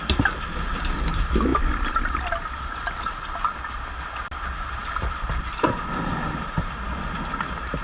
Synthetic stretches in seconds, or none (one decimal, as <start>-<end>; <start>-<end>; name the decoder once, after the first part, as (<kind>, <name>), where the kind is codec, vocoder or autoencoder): none